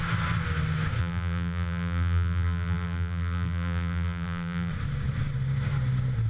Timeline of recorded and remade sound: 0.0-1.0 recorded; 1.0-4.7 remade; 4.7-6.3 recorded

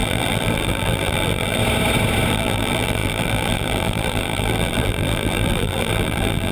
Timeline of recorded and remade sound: 0.0-1.6 remade; 1.6-2.3 recorded; 2.3-6.5 remade

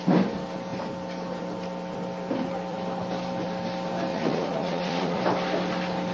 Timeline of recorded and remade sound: 0.0-4.1 recorded; 4.1-5.2 remade; 5.2-6.1 recorded